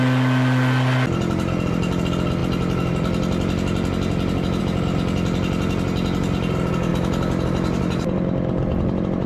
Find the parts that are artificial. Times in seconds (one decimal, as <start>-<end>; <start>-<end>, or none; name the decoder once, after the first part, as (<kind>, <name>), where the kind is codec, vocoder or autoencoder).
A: none